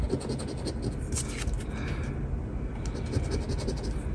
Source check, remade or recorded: recorded